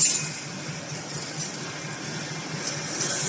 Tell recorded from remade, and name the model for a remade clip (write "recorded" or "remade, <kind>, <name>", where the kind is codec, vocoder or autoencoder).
recorded